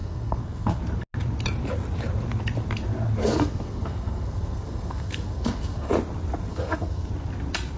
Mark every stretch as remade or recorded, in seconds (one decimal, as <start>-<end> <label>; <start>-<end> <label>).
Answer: 0.0-0.8 remade; 0.8-3.2 recorded; 3.2-5.9 remade; 5.9-6.5 recorded; 6.5-7.1 remade; 7.1-7.8 recorded